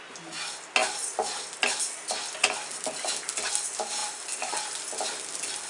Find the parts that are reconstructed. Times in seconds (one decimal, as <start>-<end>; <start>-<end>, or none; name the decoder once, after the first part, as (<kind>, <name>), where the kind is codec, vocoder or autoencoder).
none